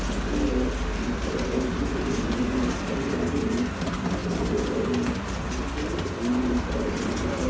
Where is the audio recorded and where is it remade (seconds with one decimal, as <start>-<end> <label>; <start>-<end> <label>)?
0.0-7.5 recorded

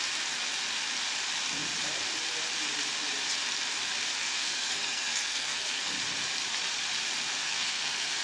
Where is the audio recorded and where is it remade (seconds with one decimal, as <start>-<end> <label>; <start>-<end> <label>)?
0.0-4.2 recorded; 4.2-5.9 remade; 5.9-7.4 recorded; 7.4-8.2 remade

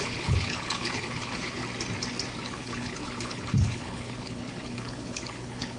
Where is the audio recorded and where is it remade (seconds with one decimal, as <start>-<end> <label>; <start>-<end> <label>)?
0.0-1.6 remade; 1.6-2.4 recorded; 2.4-5.8 remade